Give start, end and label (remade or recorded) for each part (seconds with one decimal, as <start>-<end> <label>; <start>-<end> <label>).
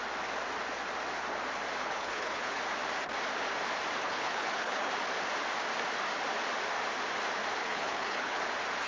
0.0-1.8 recorded; 1.8-2.6 remade; 2.6-4.0 recorded; 4.0-4.9 remade; 4.9-7.6 recorded; 7.6-8.4 remade; 8.4-8.9 recorded